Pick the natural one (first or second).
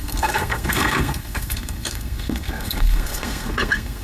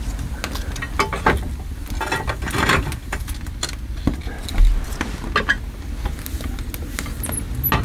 second